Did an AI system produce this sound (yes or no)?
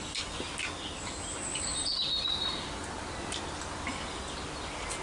no